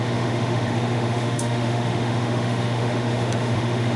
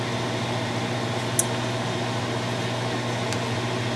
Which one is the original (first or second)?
second